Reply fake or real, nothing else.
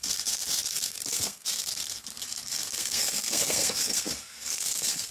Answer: fake